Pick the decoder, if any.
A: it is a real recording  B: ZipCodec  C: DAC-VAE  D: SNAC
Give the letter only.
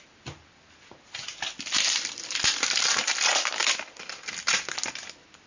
A